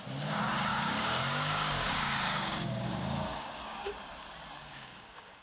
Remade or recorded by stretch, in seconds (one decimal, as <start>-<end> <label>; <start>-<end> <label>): 0.0-0.7 recorded; 0.7-3.9 remade; 3.9-4.6 recorded; 4.6-5.4 remade